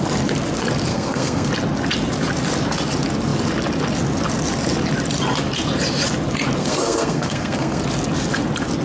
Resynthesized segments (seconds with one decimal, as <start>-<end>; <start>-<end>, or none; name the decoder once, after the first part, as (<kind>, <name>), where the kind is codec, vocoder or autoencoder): 0.9-1.5 (codec, SNAC); 6.6-7.8